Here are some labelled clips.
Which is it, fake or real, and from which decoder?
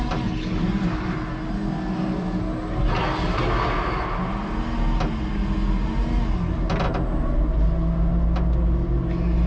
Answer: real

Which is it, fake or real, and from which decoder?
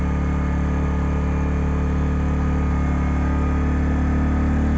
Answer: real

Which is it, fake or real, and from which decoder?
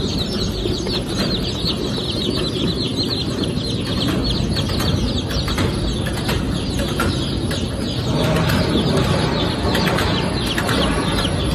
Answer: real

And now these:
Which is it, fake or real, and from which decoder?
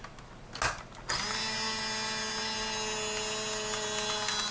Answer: real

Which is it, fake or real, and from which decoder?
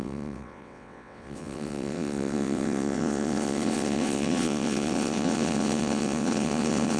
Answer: fake, vocoder, WaveNeXt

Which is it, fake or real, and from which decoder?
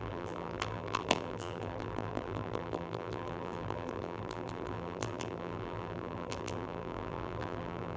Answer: fake, vocoder, BigVGAN v2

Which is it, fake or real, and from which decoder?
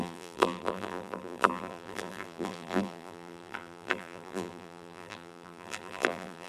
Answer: fake, vocoder, BigVGAN v2